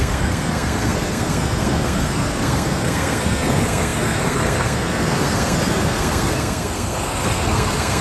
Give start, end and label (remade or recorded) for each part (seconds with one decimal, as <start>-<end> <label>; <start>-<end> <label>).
0.0-8.0 remade